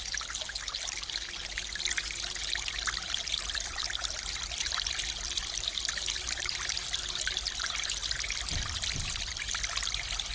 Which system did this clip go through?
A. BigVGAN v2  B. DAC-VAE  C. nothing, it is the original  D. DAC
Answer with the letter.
C